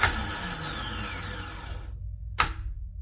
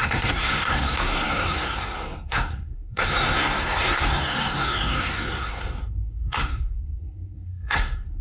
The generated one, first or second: second